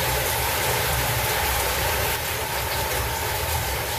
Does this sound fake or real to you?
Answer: fake